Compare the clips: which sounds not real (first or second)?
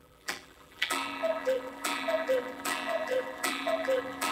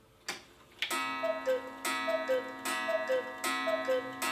first